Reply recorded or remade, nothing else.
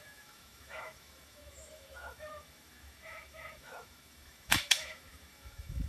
remade